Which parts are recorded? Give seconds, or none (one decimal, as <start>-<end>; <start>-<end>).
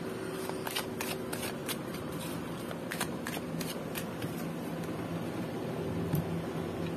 0.0-1.6; 2.2-5.1; 5.9-7.0